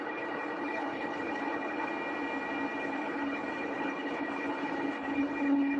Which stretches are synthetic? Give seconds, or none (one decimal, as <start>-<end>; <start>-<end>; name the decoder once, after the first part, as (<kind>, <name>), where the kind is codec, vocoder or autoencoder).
0.0-1.9 (codec, HILCodec); 2.8-5.8